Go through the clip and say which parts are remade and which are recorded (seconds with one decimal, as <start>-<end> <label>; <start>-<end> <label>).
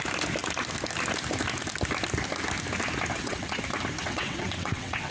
0.0-3.1 recorded; 3.1-3.6 remade; 3.6-4.0 recorded; 4.0-5.1 remade